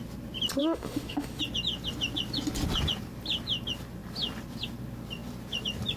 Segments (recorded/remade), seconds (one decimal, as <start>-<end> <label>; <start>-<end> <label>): 0.0-0.6 recorded; 0.6-1.4 remade; 1.4-6.0 recorded